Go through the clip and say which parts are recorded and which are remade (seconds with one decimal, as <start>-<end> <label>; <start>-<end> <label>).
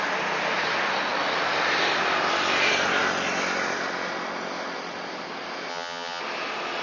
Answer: 0.0-5.7 recorded; 5.7-6.2 remade; 6.2-6.8 recorded